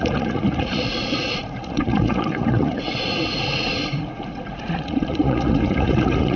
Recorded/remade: remade